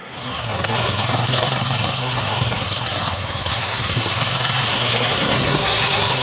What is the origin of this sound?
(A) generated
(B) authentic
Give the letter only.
A